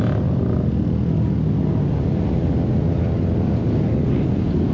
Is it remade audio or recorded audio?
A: recorded